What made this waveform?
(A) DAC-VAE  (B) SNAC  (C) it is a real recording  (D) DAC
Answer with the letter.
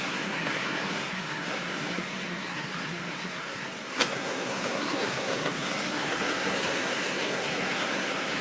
B